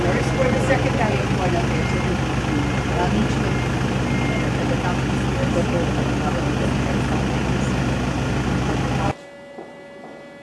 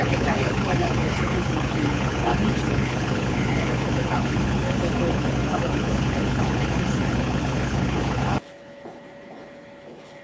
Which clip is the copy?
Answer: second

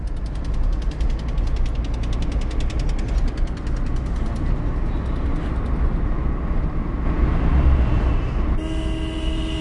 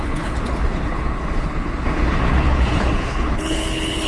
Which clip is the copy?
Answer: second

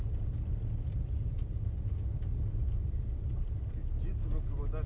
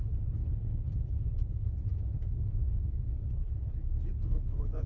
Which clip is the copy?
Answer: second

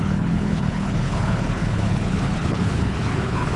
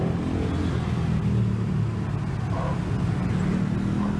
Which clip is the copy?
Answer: first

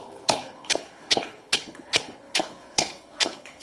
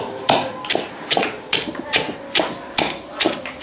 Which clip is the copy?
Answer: first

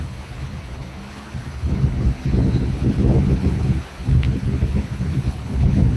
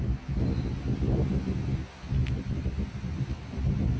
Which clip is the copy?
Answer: first